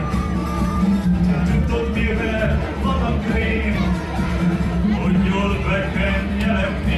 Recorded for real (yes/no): no